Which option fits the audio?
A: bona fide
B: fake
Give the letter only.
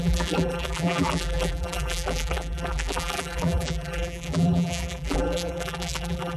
B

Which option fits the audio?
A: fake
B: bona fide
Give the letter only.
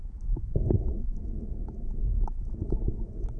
A